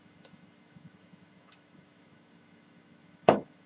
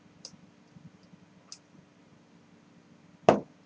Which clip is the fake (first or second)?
first